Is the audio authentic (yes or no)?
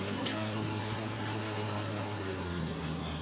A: no